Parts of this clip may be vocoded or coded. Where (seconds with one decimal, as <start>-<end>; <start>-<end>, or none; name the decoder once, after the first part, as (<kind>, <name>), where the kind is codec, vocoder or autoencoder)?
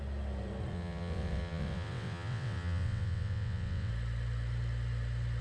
0.7-3.9 (vocoder, WaveNeXt)